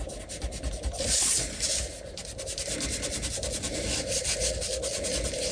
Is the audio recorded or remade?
recorded